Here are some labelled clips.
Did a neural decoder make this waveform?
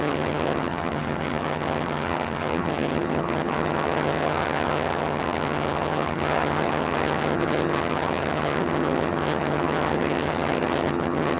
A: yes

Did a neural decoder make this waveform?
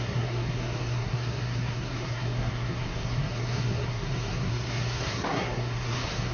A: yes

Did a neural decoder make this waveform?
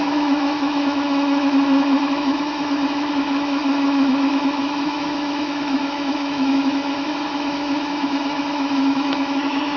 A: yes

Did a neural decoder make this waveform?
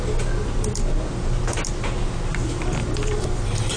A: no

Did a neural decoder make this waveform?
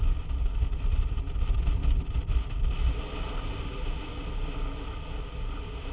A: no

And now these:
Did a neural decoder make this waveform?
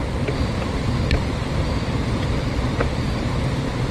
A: no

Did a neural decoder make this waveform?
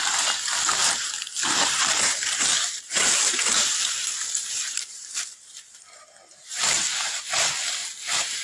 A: yes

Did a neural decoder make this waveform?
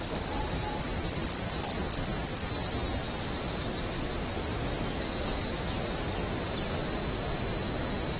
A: no